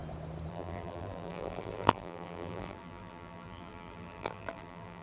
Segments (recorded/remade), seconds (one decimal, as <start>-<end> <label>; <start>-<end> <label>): 0.0-0.5 recorded; 0.5-5.0 remade